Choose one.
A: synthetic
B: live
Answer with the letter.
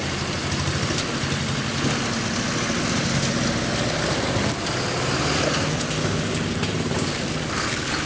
B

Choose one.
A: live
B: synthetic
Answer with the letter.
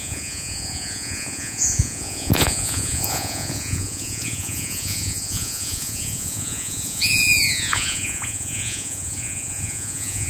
B